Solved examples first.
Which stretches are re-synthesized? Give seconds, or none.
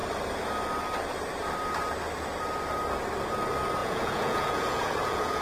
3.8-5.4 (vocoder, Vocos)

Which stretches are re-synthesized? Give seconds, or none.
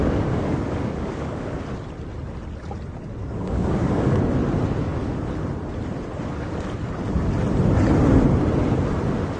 0.0-1.6 (codec, DAC); 3.2-4.2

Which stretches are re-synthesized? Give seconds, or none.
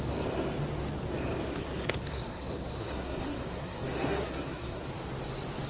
1.5-4.9 (codec, SNAC)